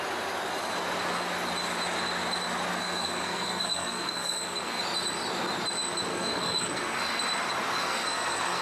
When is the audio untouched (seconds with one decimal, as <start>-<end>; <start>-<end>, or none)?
0.0-2.7; 4.8-6.1; 7.2-7.8